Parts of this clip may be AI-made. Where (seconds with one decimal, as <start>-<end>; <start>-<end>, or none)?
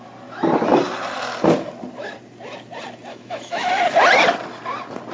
3.1-3.7